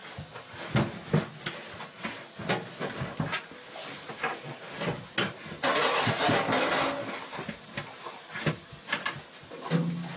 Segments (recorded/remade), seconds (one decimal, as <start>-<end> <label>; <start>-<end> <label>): 0.0-10.2 recorded

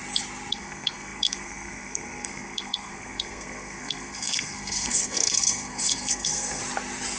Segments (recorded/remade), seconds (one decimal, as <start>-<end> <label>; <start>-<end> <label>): 0.0-0.5 recorded; 0.5-6.6 remade; 6.6-7.2 recorded

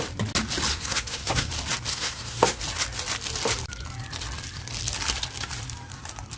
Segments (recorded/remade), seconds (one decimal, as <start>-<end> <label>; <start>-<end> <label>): 0.0-0.7 recorded; 0.7-1.5 remade; 1.5-1.9 recorded; 1.9-2.6 remade; 2.6-6.4 recorded

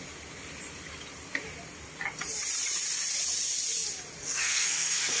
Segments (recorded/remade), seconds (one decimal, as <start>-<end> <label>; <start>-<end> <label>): 0.0-4.2 recorded; 4.2-5.2 remade

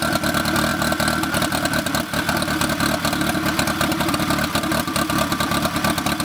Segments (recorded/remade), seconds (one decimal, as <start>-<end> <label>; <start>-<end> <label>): 0.0-6.2 recorded